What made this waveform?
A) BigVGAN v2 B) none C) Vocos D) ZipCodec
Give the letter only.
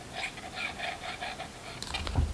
B